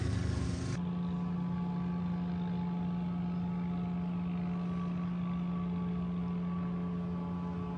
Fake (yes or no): no